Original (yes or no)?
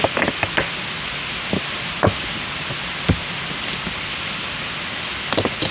yes